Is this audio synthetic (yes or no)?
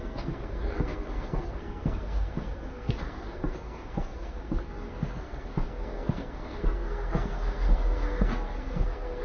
yes